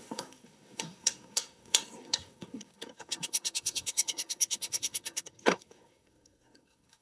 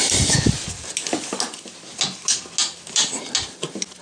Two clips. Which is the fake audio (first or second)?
first